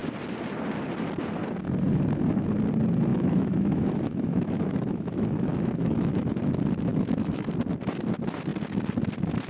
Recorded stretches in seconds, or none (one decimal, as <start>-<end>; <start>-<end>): 0.0-3.1; 6.4-6.9; 7.5-9.5